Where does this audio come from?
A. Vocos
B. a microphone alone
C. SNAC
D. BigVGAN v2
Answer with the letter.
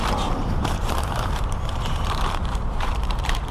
D